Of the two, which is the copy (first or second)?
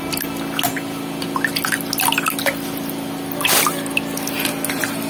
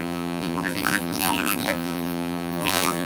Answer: second